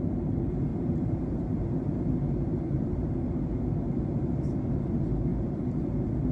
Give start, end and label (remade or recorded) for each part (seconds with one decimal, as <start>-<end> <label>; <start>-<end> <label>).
0.0-0.7 recorded; 0.7-3.4 remade; 3.4-5.3 recorded; 5.3-6.3 remade